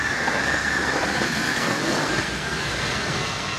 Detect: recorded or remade remade